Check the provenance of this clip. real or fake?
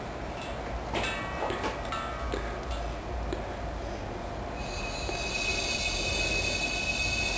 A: real